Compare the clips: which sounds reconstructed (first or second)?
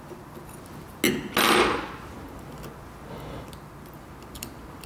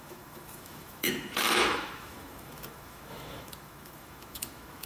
second